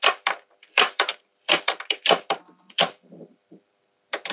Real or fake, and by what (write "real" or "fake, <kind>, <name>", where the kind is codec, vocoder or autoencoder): fake, vocoder, BigVGAN v2